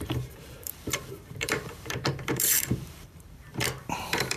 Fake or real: fake